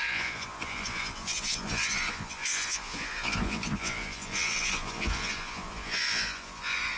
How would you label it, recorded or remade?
remade